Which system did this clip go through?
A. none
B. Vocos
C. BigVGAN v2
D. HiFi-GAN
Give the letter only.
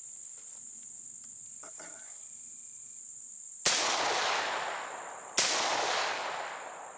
A